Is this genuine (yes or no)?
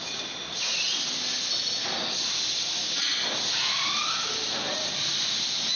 yes